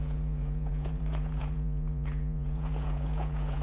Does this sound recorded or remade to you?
remade